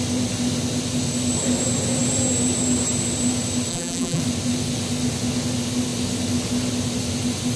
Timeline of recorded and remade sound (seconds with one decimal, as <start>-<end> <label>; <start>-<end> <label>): 0.0-3.7 recorded; 3.7-4.2 remade; 4.2-7.6 recorded